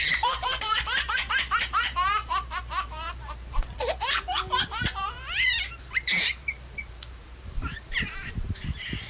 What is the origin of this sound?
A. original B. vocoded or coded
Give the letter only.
B